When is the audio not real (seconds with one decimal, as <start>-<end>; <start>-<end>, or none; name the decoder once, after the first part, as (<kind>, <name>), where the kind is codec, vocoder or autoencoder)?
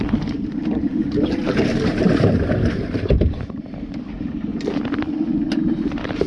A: 0.0-4.5 (vocoder, BigVGAN v2); 5.5-6.3